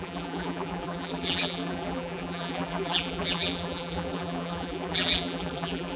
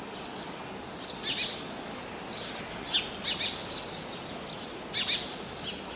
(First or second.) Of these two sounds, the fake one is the first